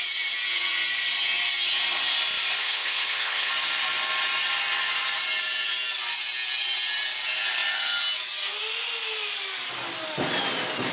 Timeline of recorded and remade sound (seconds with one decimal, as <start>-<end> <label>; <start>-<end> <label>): 0.0-2.6 recorded; 2.6-3.5 remade; 3.5-10.9 recorded